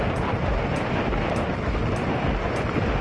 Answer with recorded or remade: recorded